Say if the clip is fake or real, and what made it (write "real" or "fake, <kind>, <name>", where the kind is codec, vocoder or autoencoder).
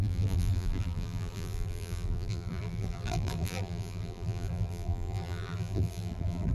fake, vocoder, BigVGAN v2